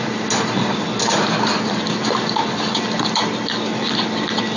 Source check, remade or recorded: recorded